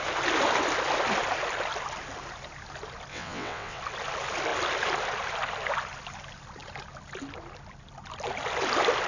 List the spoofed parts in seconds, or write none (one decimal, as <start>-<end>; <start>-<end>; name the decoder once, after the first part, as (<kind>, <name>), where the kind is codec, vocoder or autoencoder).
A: 3.1-3.8 (vocoder, WaveNeXt)